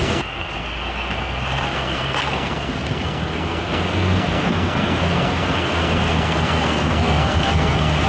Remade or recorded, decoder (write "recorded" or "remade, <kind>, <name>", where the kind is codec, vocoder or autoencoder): remade, codec, SNAC